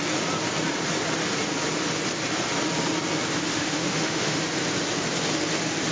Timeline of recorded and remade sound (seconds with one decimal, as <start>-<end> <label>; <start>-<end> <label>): 0.0-3.5 recorded; 3.5-4.4 remade; 4.4-5.9 recorded

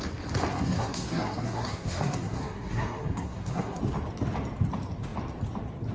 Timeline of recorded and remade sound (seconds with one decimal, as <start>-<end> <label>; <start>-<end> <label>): 0.0-0.5 recorded; 0.5-3.8 remade; 3.8-5.9 recorded

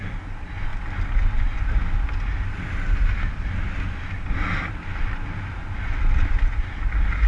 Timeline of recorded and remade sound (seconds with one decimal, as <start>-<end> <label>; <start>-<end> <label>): 0.0-7.3 recorded

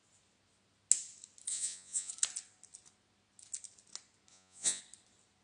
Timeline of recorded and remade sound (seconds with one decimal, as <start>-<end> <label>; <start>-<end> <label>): 0.0-1.5 recorded; 1.5-2.1 remade; 2.1-4.3 recorded; 4.3-4.8 remade; 4.8-5.4 recorded

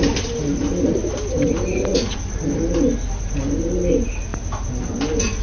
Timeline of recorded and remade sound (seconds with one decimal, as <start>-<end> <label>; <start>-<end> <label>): 0.0-5.4 recorded